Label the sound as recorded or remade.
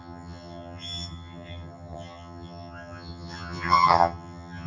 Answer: remade